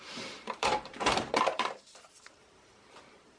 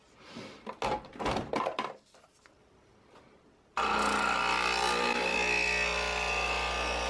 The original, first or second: second